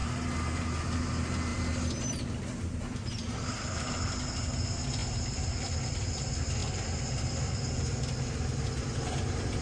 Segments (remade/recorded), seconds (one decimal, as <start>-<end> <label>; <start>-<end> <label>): 0.0-9.6 recorded